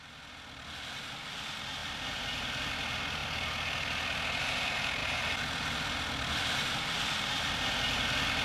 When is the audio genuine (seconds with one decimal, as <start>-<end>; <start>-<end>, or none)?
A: 0.0-1.8; 2.7-5.0; 7.7-8.4